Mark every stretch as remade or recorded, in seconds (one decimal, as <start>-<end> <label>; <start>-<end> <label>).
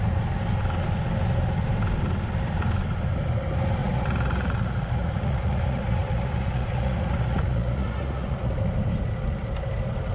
0.0-3.8 recorded; 3.8-8.5 remade; 8.5-10.1 recorded